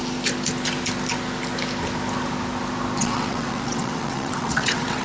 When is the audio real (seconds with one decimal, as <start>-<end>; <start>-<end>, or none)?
0.0-3.0